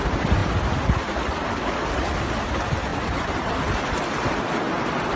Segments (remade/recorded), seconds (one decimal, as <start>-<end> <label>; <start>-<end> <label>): 0.0-5.2 recorded